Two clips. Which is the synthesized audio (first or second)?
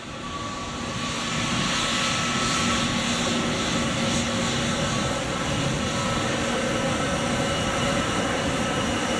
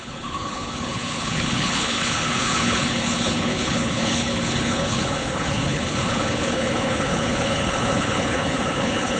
second